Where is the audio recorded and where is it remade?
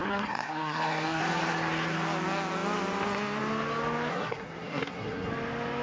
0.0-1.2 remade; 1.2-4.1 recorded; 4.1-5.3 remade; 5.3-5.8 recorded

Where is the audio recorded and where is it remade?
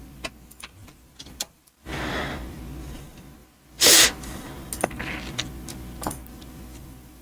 0.0-0.8 recorded; 0.8-2.6 remade; 2.6-3.4 recorded; 3.4-4.7 remade; 4.7-7.2 recorded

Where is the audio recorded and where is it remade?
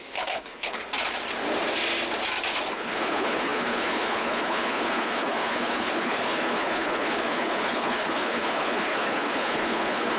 0.0-0.8 remade; 0.8-2.7 recorded; 2.7-10.2 remade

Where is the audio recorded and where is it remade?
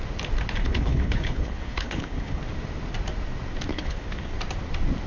0.0-0.6 recorded; 0.6-2.4 remade; 2.4-3.7 recorded; 3.7-4.3 remade; 4.3-5.1 recorded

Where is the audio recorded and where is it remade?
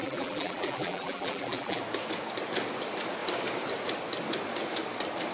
0.0-1.8 remade; 1.8-5.3 recorded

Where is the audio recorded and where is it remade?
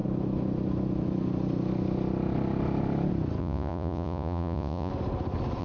0.0-3.4 recorded; 3.4-4.9 remade; 4.9-5.6 recorded